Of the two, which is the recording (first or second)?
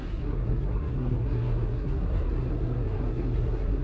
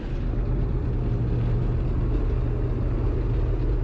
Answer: second